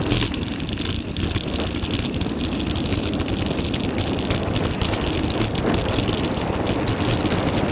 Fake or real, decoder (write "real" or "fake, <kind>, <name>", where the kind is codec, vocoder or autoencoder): real